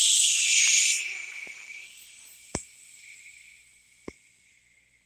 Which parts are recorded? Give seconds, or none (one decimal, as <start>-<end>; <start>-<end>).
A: 0.0-1.7; 3.5-5.1